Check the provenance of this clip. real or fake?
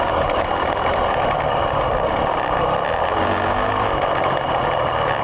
real